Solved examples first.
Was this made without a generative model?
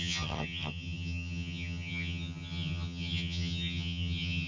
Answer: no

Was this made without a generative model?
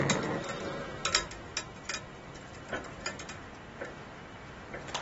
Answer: yes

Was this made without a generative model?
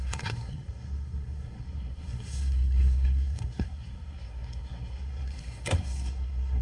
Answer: no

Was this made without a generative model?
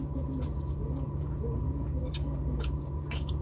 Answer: no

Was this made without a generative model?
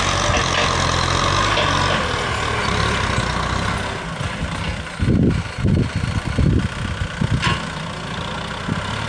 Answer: yes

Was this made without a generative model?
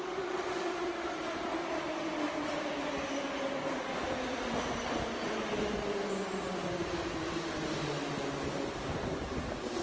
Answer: yes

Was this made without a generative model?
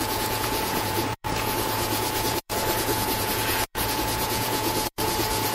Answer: no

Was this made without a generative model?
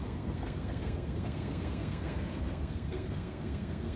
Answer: no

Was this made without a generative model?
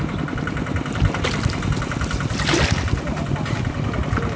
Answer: yes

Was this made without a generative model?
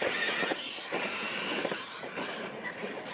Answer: yes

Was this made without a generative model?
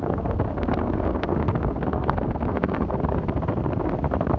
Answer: no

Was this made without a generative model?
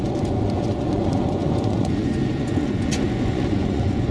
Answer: no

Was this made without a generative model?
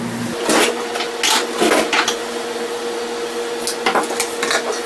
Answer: yes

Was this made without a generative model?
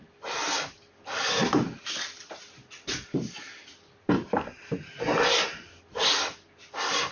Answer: yes